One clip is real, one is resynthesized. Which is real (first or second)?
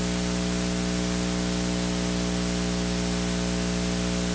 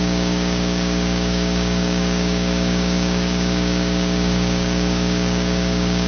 first